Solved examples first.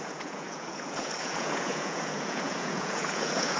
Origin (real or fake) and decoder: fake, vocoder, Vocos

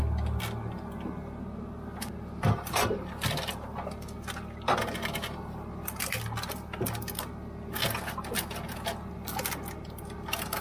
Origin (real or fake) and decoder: real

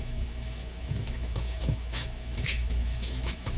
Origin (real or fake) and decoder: fake, autoencoder, DAC-VAE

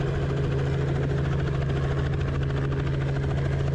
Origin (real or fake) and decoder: real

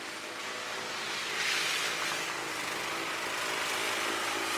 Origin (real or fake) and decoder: real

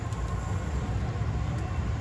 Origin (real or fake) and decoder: real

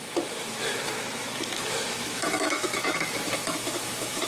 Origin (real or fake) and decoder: fake, autoencoder, DAC-VAE